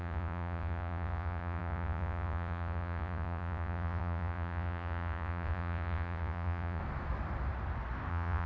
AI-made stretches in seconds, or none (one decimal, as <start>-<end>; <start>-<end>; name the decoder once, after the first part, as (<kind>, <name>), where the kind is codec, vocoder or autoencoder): 0.0-6.8 (vocoder, Vocos); 8.1-8.5